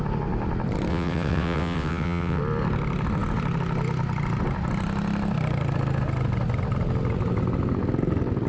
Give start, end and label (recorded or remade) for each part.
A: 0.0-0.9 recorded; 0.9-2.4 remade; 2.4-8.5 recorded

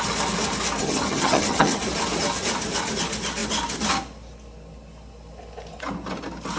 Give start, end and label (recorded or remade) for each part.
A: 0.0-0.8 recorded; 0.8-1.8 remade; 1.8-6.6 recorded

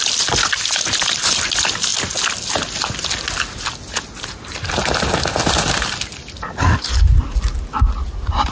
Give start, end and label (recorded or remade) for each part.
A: 0.0-8.5 recorded

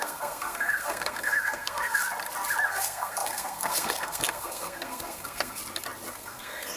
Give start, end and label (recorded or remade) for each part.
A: 0.0-2.0 remade; 2.0-2.7 recorded; 2.7-5.6 remade; 5.6-6.1 recorded; 6.1-6.8 remade

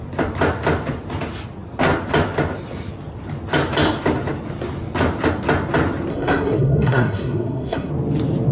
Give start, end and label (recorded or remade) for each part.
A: 0.0-6.1 recorded; 6.1-7.9 remade; 7.9-8.5 recorded

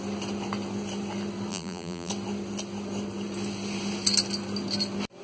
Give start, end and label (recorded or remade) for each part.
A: 0.0-1.5 recorded; 1.5-2.1 remade; 2.1-5.2 recorded